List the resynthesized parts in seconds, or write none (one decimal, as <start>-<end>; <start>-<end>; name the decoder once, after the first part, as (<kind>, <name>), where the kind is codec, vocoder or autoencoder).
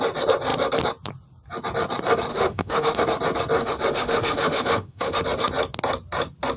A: 2.3-3.0 (autoencoder, DAC-VAE); 3.6-5.2